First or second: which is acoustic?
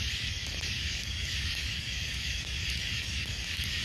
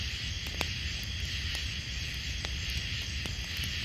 second